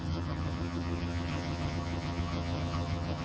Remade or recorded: remade